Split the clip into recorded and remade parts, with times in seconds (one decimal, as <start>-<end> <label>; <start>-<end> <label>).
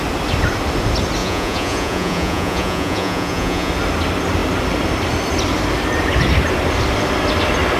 0.0-1.2 recorded; 1.2-3.7 remade; 3.7-7.8 recorded